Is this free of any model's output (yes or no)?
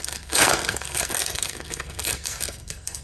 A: no